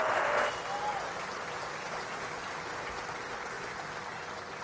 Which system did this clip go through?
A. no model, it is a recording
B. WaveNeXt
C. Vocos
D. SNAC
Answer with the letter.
A